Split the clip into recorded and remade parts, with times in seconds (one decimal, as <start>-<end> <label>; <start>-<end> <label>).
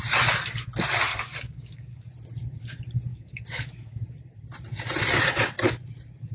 0.0-1.1 recorded; 1.1-2.1 remade; 2.1-3.1 recorded; 3.1-4.0 remade; 4.0-6.3 recorded